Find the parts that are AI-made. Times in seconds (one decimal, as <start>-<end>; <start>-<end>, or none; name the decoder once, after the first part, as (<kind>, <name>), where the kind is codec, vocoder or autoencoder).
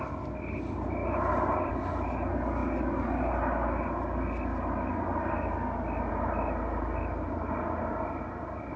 1.0-1.7 (vocoder, BigVGAN v2)